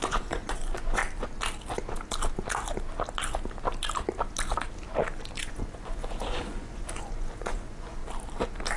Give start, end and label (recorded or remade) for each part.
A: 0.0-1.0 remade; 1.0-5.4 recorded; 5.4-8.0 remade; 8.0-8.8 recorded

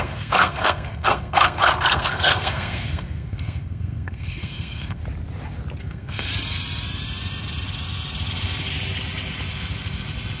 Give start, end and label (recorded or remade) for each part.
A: 0.0-5.0 remade; 5.0-5.8 recorded; 5.8-6.3 remade; 6.3-10.4 recorded

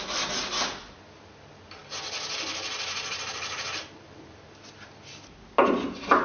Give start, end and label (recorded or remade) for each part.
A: 0.0-6.2 recorded

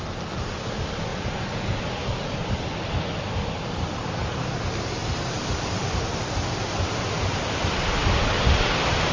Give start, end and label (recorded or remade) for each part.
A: 0.0-9.1 recorded